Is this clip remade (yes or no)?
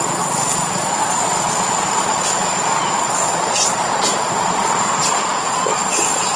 yes